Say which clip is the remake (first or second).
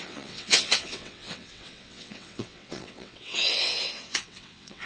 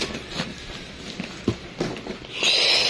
first